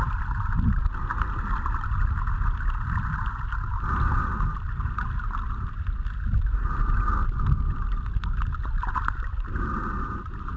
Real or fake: real